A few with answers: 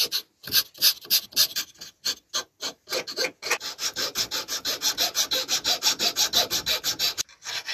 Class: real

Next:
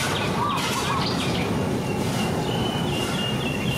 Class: real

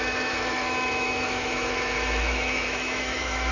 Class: fake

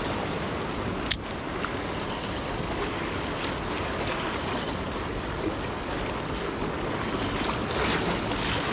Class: real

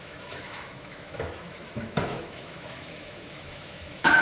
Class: fake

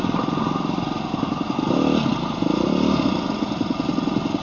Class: real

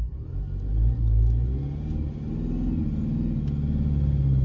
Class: real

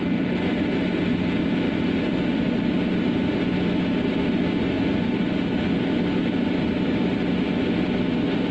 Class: real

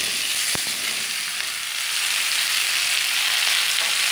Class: real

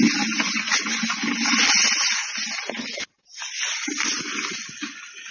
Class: real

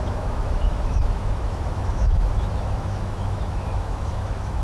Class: fake